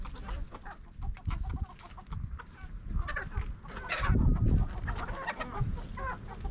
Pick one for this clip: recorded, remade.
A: recorded